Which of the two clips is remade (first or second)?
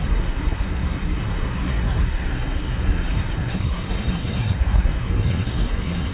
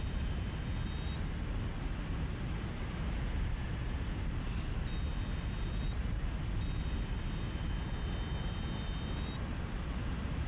first